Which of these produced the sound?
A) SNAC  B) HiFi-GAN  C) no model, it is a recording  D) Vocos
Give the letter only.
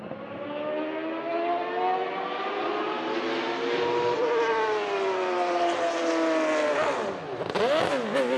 C